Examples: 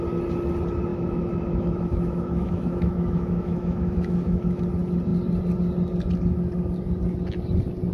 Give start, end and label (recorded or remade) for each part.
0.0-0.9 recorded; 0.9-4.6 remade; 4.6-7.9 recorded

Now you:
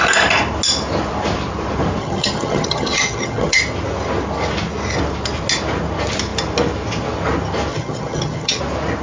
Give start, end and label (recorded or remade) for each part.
0.0-2.0 recorded; 2.0-3.6 remade; 3.6-7.7 recorded; 7.7-8.6 remade; 8.6-9.0 recorded

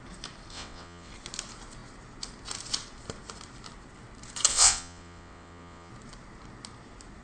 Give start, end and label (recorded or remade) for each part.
0.0-0.5 recorded; 0.5-1.1 remade; 1.1-4.5 recorded; 4.5-5.9 remade; 5.9-7.2 recorded

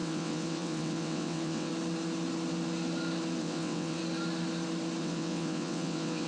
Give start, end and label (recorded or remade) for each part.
0.0-1.7 remade; 1.7-3.4 recorded; 3.4-4.0 remade; 4.0-5.0 recorded; 5.0-6.3 remade

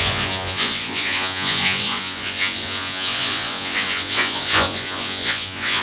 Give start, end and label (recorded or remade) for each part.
0.0-5.8 remade

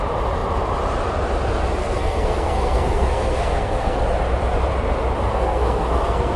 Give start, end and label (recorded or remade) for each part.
0.0-1.8 recorded; 1.8-4.0 remade; 4.0-5.3 recorded; 5.3-6.4 remade

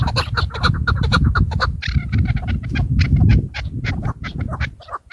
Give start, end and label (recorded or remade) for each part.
0.0-5.1 recorded